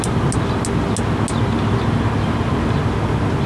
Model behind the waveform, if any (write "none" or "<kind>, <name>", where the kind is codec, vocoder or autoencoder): none